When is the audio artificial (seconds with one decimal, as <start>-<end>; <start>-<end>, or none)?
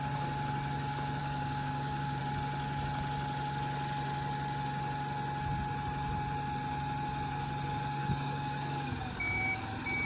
1.2-2.2; 8.0-9.6